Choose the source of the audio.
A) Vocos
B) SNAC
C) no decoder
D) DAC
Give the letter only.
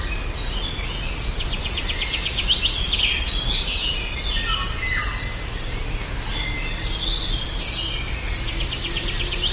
C